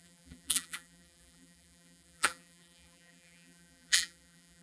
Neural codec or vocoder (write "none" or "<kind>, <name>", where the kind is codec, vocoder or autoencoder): vocoder, BigVGAN v2